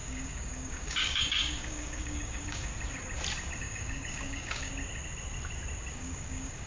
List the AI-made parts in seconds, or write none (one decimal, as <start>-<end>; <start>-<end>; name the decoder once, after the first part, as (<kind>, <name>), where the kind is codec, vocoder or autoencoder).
0.0-2.7 (codec, DAC); 3.6-4.7; 5.9-6.7